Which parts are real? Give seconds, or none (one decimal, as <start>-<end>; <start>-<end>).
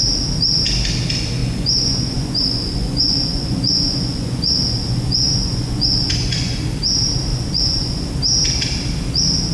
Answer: 0.0-1.4; 6.6-7.3; 8.1-9.5